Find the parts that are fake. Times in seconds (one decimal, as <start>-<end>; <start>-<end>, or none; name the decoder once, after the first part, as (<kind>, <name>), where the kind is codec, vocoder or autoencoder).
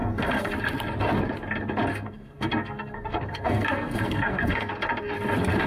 0.0-0.5 (codec, SNAC); 1.9-4.7